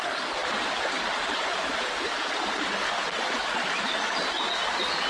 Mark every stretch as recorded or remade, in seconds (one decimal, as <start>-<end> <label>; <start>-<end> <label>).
0.0-5.1 recorded